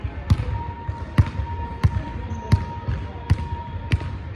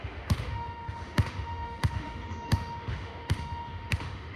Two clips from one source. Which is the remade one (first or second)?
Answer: second